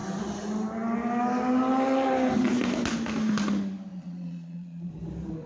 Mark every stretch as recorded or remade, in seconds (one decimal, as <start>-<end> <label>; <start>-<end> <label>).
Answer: 0.0-3.9 recorded; 3.9-4.9 remade; 4.9-5.5 recorded